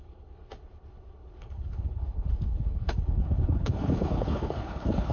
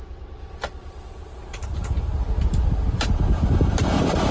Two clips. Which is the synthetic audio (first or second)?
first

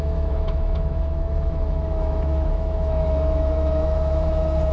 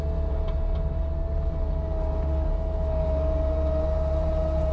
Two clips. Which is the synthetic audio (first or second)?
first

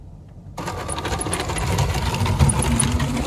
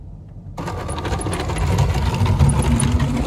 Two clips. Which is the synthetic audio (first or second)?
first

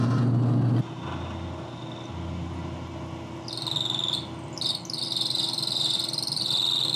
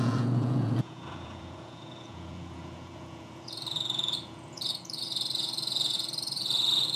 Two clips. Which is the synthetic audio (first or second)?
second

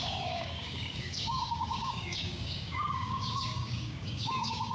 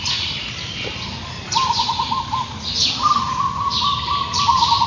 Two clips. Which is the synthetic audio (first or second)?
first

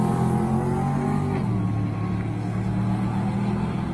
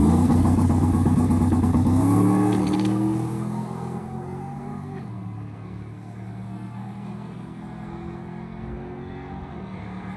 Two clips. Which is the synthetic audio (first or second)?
second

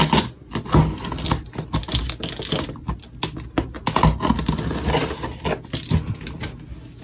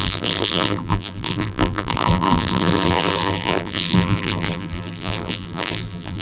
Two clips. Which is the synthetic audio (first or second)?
second